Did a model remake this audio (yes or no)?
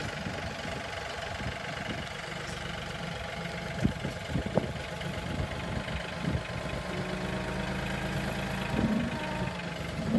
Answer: no